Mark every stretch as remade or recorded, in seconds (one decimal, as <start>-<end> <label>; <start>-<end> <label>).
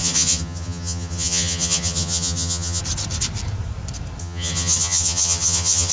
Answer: 0.0-2.8 remade; 2.8-4.2 recorded; 4.2-5.9 remade